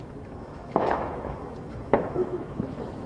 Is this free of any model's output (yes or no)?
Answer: no